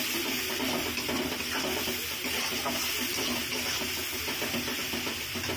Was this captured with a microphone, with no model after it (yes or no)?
yes